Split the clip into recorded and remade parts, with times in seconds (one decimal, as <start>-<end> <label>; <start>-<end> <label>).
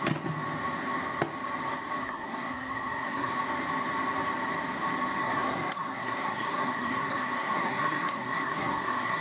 0.0-2.0 recorded; 2.0-3.3 remade; 3.3-5.2 recorded; 5.2-9.2 remade